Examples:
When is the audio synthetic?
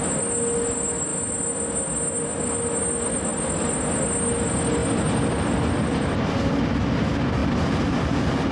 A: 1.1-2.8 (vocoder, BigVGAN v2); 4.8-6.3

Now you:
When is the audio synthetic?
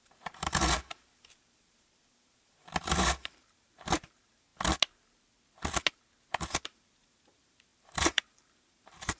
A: 0.0-4.5 (vocoder, BigVGAN v2); 6.3-9.2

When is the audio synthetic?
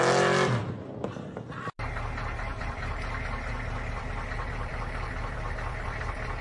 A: 0.6-1.1 (vocoder, BigVGAN v2); 2.5-6.4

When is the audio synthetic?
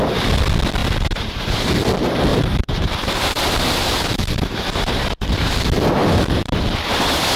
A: 0.8-1.7 (vocoder, BigVGAN v2); 2.3-5.6; 6.0-6.6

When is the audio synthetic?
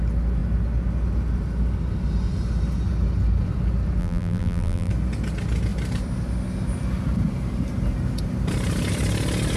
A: 4.0-4.9 (vocoder, BigVGAN v2)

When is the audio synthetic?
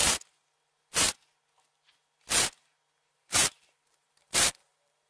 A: 3.1-5.1 (vocoder, BigVGAN v2)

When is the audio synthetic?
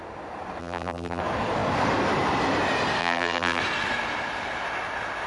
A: 0.6-1.2 (vocoder, BigVGAN v2); 3.0-3.6